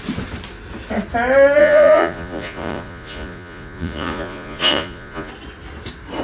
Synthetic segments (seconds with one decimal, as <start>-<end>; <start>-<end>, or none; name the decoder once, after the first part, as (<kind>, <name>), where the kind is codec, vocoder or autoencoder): 1.6-5.3 (vocoder, Vocos)